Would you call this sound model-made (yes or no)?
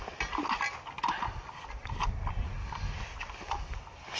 no